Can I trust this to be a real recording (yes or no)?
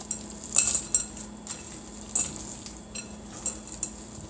yes